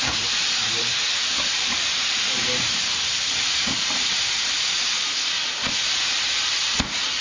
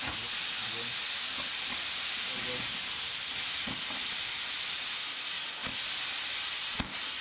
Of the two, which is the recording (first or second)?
second